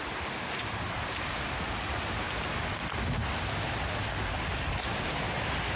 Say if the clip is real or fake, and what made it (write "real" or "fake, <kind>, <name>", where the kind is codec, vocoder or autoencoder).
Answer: real